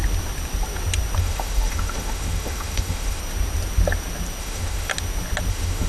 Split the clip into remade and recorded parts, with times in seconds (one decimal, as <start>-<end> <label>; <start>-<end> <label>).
0.0-1.2 recorded; 1.2-3.2 remade; 3.2-4.4 recorded; 4.4-4.9 remade; 4.9-5.5 recorded; 5.5-5.9 remade